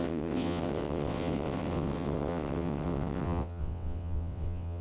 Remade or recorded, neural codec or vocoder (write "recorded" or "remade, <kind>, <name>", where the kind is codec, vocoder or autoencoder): remade, vocoder, WaveNeXt